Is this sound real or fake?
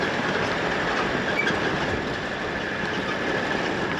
real